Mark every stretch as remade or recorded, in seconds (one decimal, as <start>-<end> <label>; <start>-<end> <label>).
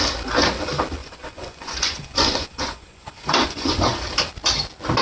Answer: 0.0-1.0 recorded; 1.0-4.0 remade; 4.0-5.0 recorded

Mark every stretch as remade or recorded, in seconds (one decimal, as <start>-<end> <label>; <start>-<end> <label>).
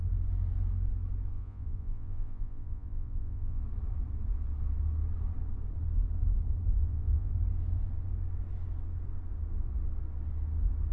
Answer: 0.0-1.3 recorded; 1.3-3.6 remade; 3.6-6.8 recorded; 6.8-7.3 remade; 7.3-10.9 recorded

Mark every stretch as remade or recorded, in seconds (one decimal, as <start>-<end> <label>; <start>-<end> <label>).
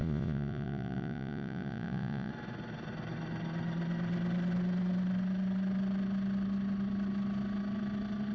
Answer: 0.0-2.3 remade; 2.3-8.3 recorded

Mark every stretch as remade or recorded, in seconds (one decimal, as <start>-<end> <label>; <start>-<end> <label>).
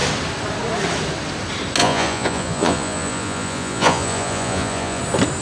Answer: 0.0-1.8 recorded; 1.8-5.0 remade; 5.0-5.4 recorded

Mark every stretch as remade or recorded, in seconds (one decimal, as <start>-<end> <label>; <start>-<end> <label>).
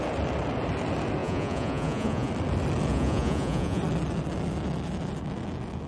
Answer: 0.0-1.2 recorded; 1.2-2.3 remade; 2.3-2.9 recorded; 2.9-3.8 remade; 3.8-5.9 recorded